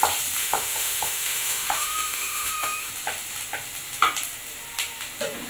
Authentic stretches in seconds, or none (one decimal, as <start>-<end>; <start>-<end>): 0.0-0.4; 2.9-5.5